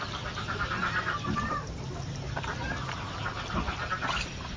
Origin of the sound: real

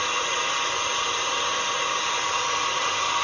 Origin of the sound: real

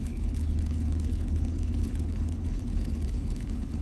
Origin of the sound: fake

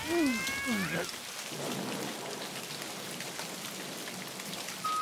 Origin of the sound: real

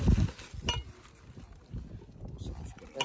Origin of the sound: real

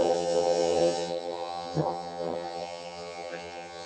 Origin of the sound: fake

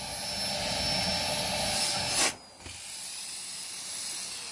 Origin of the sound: real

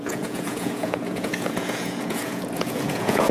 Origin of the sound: fake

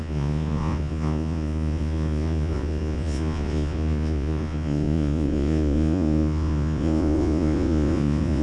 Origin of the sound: fake